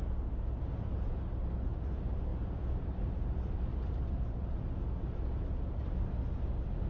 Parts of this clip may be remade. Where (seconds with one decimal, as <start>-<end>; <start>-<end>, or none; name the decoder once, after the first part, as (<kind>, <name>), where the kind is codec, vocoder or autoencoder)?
none